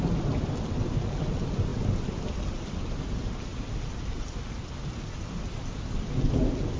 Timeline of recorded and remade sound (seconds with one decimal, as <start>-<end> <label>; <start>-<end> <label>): 0.0-6.8 recorded